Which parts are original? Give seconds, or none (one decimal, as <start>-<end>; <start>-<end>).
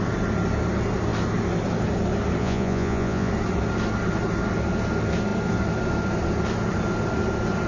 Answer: 0.0-2.4; 3.3-7.7